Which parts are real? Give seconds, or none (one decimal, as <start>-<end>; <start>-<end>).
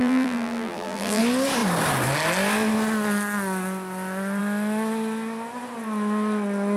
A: 1.2-6.8